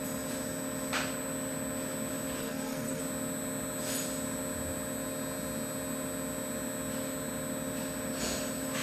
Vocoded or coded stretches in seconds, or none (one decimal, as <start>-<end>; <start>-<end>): 2.4-3.0